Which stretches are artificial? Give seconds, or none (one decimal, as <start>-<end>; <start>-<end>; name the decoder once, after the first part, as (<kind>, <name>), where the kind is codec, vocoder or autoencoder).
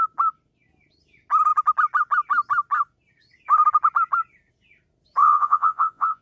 5.2-6.2 (vocoder, Vocos)